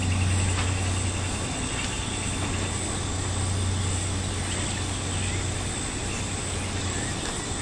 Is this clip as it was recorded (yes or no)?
yes